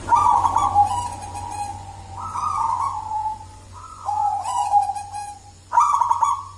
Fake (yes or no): yes